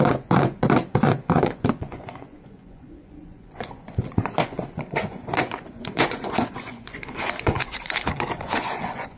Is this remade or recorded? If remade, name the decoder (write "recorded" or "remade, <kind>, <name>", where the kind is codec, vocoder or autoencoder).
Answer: remade, vocoder, Vocos